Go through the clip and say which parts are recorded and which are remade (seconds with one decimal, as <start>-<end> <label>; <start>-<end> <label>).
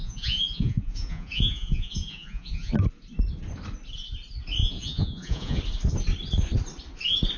0.0-2.7 remade; 2.7-4.6 recorded; 4.6-5.6 remade; 5.6-7.4 recorded